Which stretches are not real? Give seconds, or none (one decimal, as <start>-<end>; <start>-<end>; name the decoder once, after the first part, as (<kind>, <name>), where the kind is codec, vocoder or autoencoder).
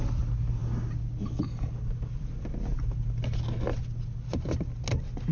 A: none